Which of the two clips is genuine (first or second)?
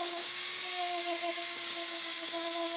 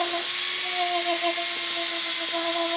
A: second